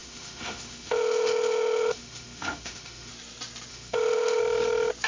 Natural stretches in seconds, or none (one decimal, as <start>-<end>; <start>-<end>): 3.1-3.7; 4.4-5.1